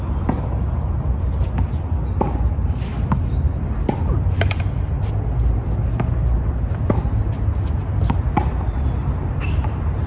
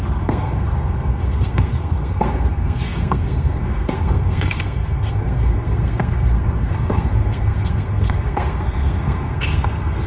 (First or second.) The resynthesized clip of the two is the second